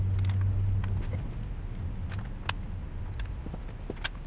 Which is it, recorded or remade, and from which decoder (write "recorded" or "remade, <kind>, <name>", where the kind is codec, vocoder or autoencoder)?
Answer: recorded